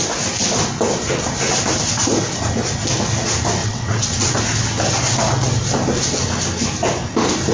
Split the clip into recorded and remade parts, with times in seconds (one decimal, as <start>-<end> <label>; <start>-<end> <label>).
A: 0.0-3.6 recorded; 3.6-4.4 remade; 4.4-7.5 recorded